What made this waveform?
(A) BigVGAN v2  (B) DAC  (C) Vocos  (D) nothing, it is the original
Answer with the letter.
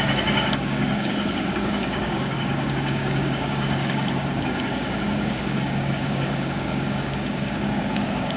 B